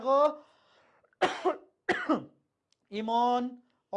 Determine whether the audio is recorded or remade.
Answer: recorded